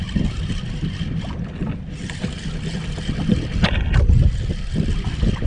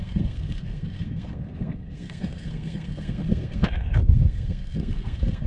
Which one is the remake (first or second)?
second